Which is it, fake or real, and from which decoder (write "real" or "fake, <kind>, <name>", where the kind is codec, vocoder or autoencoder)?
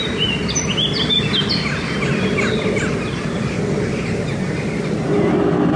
real